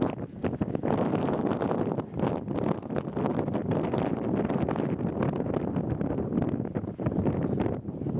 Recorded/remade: recorded